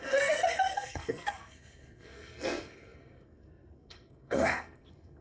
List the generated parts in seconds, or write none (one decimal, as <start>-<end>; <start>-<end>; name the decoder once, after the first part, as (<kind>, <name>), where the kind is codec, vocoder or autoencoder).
0.0-5.2 (codec, SNAC)